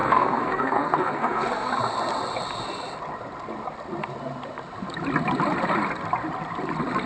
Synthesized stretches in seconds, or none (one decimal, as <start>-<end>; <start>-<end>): 0.0-1.7